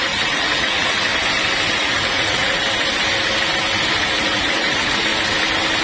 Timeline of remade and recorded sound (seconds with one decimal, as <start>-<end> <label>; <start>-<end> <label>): 0.0-1.1 remade; 1.1-1.7 recorded; 1.7-2.6 remade; 2.6-4.0 recorded; 4.0-5.1 remade; 5.1-5.8 recorded